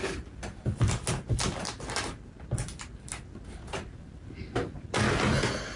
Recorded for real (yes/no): yes